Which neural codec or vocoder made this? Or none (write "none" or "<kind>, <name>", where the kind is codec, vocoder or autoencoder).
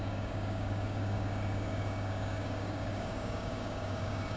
codec, DAC